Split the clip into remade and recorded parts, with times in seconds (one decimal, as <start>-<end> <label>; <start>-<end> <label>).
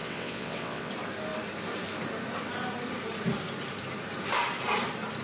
0.0-0.9 remade; 0.9-5.2 recorded